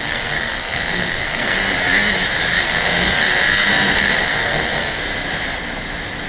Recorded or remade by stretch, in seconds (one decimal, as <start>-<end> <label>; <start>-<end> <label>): 0.0-1.6 remade; 1.6-2.6 recorded; 2.6-5.0 remade; 5.0-6.3 recorded